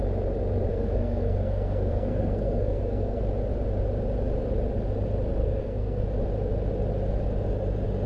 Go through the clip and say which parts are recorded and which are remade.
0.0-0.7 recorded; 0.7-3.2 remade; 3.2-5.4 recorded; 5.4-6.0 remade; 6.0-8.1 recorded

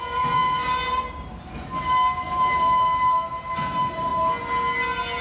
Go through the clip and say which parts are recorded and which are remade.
0.0-5.2 recorded